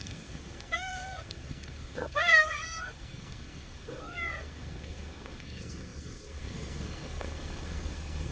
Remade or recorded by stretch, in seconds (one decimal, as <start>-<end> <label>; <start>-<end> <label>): 0.0-8.3 remade